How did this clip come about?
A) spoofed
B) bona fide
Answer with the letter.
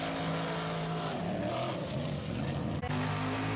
B